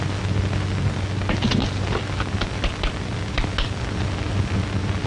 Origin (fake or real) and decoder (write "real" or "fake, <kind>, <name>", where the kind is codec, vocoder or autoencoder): real